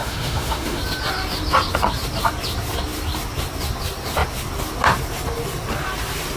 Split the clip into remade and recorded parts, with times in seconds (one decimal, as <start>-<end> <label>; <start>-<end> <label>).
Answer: 0.0-0.8 remade; 0.8-6.4 recorded